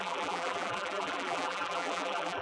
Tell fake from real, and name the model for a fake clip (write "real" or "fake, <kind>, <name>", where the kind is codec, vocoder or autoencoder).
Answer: fake, vocoder, BigVGAN v2